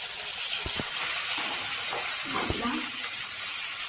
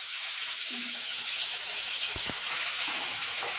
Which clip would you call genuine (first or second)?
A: first